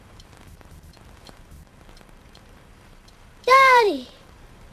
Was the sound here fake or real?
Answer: fake